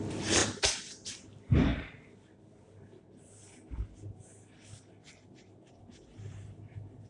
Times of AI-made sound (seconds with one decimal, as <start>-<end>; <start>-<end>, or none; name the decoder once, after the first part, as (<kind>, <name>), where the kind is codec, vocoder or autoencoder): none